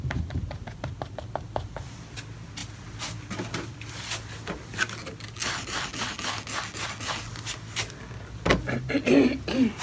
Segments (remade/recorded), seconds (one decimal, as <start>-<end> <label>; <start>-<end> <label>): 0.0-9.8 recorded